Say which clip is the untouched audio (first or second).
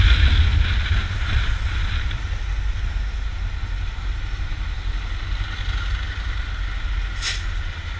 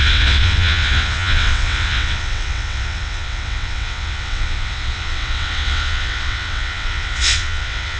first